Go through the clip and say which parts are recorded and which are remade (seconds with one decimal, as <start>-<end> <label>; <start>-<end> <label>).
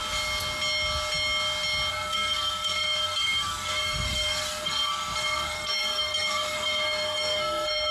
0.0-1.9 recorded; 1.9-7.9 remade